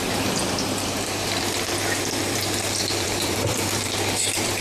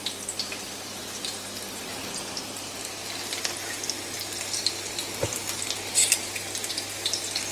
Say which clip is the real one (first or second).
second